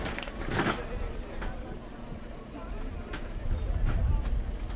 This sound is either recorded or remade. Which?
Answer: recorded